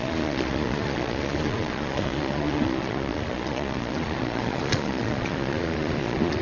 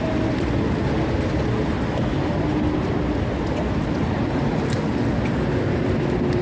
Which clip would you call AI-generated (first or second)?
first